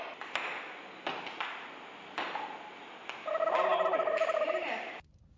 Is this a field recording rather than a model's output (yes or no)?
yes